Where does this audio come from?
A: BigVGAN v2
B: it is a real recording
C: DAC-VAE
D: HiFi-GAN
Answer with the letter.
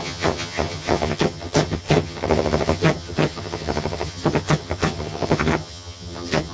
D